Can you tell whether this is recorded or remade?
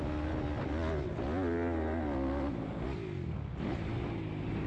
recorded